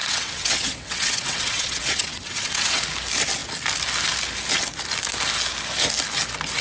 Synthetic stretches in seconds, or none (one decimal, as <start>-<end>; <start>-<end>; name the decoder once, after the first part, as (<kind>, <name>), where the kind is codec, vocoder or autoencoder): 0.0-2.8 (vocoder, WaveNeXt)